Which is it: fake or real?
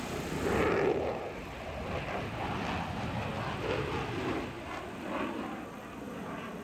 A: real